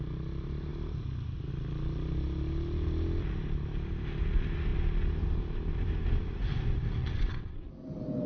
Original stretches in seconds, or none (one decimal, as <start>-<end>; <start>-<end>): 0.0-7.0; 7.7-8.3